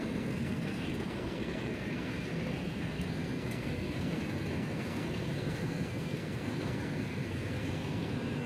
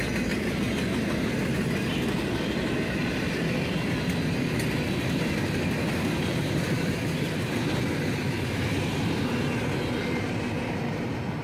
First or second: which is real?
second